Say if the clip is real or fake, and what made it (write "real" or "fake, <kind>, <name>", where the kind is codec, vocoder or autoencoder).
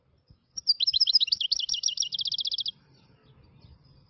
real